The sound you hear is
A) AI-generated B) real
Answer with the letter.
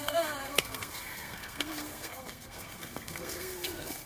A